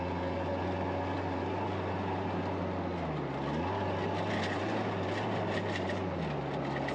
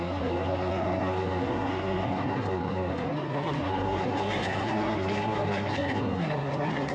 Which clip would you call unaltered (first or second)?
first